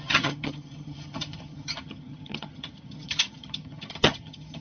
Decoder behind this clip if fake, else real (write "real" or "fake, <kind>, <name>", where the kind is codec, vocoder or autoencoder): fake, vocoder, HiFi-GAN